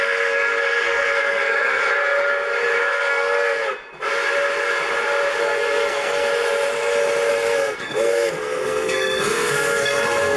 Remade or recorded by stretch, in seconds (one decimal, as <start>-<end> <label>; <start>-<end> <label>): 0.0-1.8 remade; 1.8-2.8 recorded; 2.8-3.6 remade; 3.6-5.4 recorded; 5.4-6.3 remade; 6.3-7.3 recorded; 7.3-10.4 remade